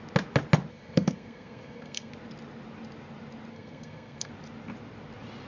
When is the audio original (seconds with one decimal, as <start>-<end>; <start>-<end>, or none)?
0.0-0.7; 2.1-3.5; 4.3-5.5